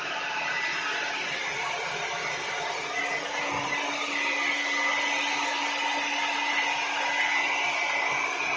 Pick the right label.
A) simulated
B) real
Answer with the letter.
B